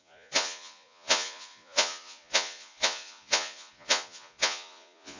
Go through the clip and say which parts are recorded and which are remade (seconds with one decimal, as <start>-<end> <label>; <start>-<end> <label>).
0.0-5.2 remade